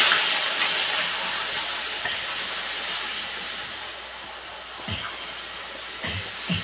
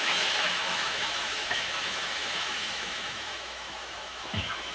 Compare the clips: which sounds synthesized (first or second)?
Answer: second